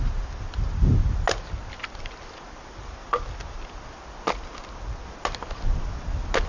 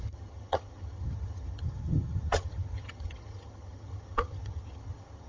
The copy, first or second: second